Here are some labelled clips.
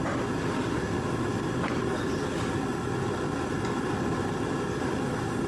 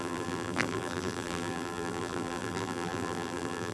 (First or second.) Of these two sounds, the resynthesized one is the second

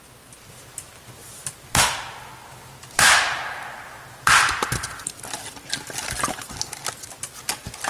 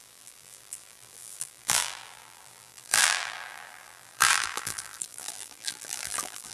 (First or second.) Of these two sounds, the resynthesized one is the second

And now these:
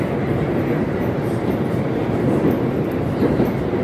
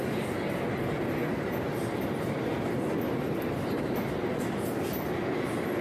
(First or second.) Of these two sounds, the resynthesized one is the first